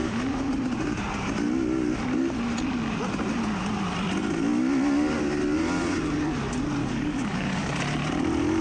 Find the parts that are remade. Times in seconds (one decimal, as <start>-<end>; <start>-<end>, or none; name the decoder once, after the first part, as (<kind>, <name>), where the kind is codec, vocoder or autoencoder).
0.0-0.5 (codec, DAC); 6.8-7.8